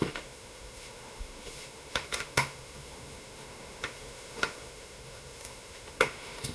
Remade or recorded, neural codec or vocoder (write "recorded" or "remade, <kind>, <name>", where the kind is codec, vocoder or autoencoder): remade, autoencoder, DAC-VAE